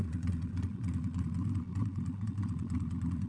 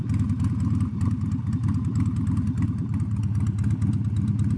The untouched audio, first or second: second